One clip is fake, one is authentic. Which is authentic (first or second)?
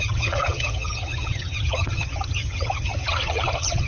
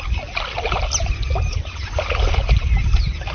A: second